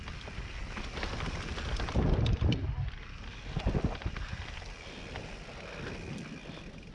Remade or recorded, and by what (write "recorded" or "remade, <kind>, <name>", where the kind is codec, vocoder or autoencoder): recorded